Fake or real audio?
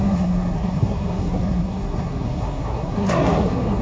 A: fake